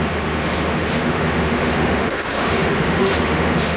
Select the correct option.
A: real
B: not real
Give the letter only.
B